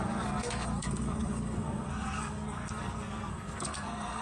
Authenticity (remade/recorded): remade